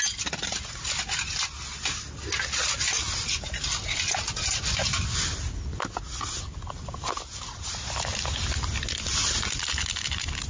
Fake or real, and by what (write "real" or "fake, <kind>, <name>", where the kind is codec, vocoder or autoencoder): real